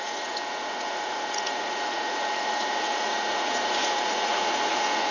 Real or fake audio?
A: fake